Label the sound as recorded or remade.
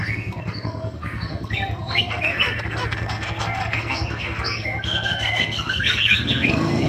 remade